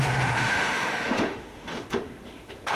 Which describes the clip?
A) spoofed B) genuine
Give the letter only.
A